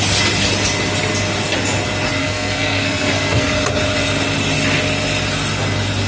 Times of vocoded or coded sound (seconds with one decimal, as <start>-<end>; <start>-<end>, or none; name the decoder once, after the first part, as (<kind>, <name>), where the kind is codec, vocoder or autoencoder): 2.2-3.5 (codec, SNAC)

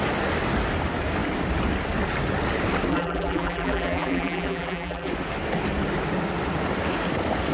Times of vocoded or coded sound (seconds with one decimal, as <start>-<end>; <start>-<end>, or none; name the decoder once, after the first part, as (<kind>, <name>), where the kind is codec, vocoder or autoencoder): 2.9-5.1 (vocoder, BigVGAN v2)

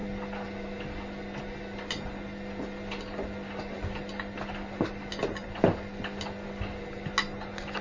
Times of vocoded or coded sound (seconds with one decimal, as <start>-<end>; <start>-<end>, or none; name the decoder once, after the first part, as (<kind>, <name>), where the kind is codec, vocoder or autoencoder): none

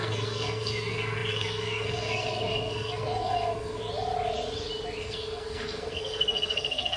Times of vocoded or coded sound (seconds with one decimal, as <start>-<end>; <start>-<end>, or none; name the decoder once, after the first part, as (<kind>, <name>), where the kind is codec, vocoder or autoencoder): 0.0-3.8 (codec, SNAC); 5.0-7.0

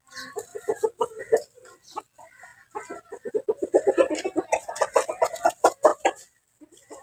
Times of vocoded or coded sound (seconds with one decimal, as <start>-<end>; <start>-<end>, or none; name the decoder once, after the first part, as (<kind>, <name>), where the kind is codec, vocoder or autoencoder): none

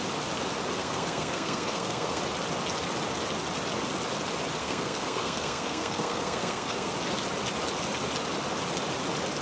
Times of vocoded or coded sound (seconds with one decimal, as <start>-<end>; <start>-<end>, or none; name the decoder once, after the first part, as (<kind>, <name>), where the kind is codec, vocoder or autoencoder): 0.8-2.2 (codec, SNAC); 4.6-6.9

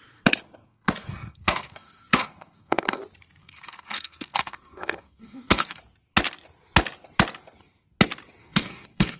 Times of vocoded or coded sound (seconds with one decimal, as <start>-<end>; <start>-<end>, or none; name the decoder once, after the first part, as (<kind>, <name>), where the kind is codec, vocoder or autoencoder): 0.6-3.0 (codec, SNAC); 3.4-5.8; 8.4-9.2